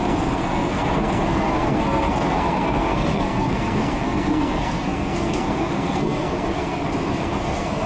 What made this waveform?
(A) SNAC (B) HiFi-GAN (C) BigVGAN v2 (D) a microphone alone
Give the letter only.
A